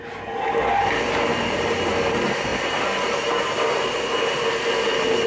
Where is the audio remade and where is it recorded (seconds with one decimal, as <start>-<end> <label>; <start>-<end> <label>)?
0.0-1.3 recorded; 1.3-1.9 remade; 1.9-2.5 recorded; 2.5-3.4 remade; 3.4-5.3 recorded